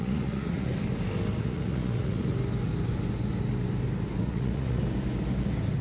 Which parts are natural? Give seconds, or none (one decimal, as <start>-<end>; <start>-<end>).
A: 0.7-1.4; 2.3-4.2; 4.8-5.8